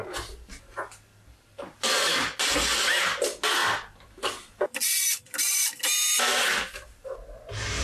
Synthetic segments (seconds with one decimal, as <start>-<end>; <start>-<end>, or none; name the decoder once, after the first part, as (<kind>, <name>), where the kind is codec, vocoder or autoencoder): none